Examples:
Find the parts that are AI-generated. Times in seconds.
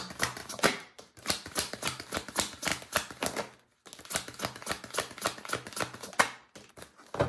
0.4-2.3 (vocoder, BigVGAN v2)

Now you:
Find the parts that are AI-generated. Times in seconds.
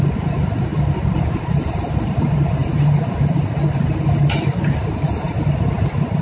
none